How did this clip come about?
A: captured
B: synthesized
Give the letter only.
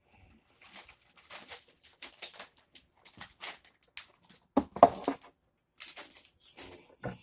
A